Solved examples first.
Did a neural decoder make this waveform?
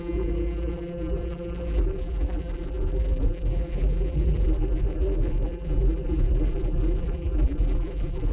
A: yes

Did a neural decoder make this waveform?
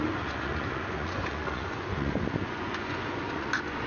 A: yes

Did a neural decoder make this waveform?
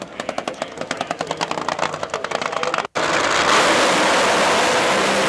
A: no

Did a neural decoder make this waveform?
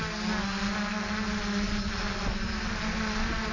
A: no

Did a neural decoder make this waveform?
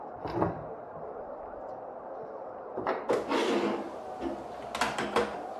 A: no